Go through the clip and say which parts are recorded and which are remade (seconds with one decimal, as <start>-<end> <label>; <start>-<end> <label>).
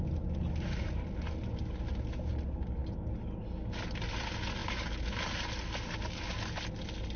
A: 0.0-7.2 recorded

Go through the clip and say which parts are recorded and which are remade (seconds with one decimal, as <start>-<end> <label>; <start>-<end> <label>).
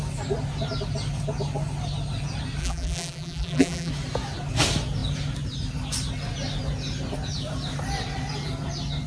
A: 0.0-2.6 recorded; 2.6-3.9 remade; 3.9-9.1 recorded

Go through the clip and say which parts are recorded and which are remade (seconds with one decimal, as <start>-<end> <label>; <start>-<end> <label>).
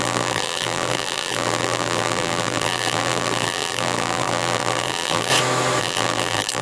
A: 0.0-5.3 remade; 5.3-5.8 recorded; 5.8-6.6 remade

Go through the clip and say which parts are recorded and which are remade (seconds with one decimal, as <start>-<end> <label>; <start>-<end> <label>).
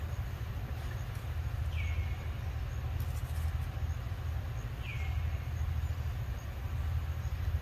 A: 0.0-7.6 recorded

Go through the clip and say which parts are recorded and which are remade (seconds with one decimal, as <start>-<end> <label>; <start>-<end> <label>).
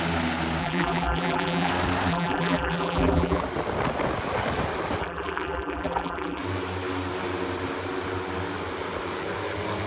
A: 0.0-0.6 recorded; 0.6-1.7 remade; 1.7-2.1 recorded; 2.1-3.4 remade; 3.4-5.0 recorded; 5.0-6.4 remade; 6.4-9.9 recorded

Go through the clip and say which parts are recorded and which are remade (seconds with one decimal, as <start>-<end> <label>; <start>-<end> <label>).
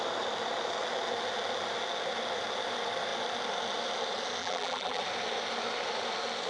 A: 0.0-4.4 recorded; 4.4-5.0 remade; 5.0-6.5 recorded